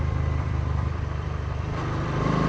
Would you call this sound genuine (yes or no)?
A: no